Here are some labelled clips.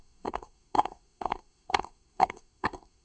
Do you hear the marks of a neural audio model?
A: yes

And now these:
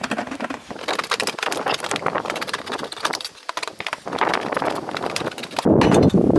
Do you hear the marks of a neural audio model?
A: no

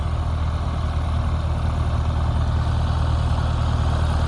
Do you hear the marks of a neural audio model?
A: no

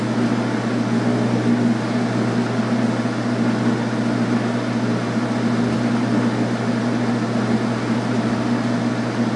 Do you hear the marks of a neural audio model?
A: no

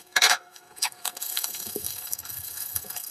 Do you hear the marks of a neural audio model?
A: yes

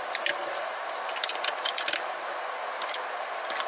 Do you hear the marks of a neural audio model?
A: no